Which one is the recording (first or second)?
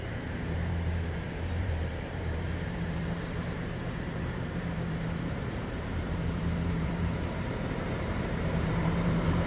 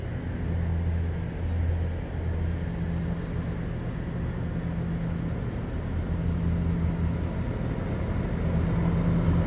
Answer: second